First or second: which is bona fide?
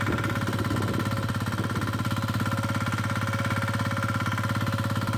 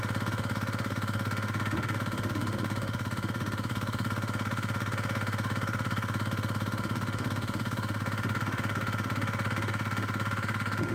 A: first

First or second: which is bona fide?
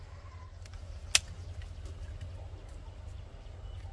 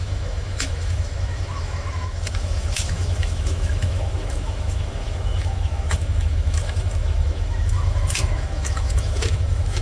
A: first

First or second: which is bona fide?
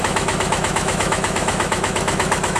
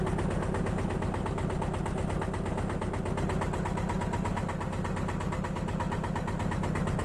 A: second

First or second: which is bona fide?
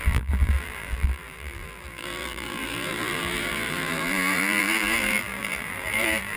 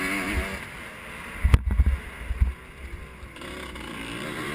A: second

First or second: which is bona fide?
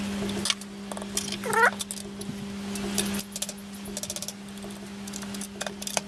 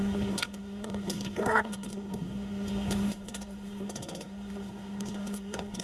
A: first